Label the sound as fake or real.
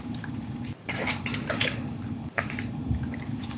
fake